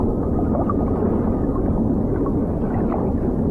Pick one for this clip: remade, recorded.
recorded